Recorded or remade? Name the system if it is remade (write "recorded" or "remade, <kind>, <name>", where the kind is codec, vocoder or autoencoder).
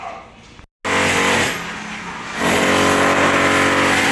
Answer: recorded